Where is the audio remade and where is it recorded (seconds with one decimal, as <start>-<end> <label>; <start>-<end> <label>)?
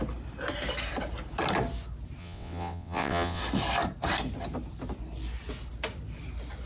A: 0.0-2.2 recorded; 2.2-3.4 remade; 3.4-6.7 recorded